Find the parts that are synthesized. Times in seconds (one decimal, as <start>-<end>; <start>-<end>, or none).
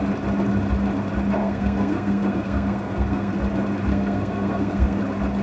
1.4-3.3; 3.9-5.0